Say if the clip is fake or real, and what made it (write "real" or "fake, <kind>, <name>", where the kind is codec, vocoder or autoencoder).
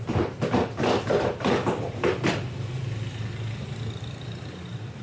real